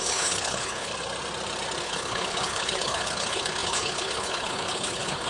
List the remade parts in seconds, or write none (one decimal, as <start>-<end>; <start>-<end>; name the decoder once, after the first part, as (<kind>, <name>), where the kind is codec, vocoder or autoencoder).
0.0-0.9 (codec, HILCodec); 1.8-5.3